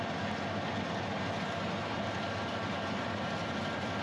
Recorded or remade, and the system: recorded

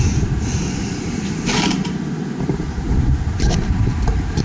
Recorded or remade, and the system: remade, vocoder, BigVGAN v2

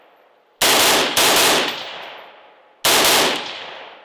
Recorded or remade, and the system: recorded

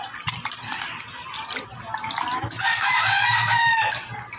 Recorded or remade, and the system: recorded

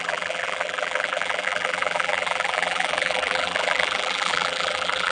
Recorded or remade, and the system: remade, vocoder, BigVGAN v2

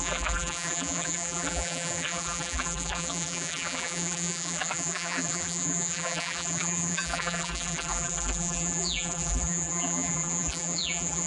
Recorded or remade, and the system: remade, vocoder, BigVGAN v2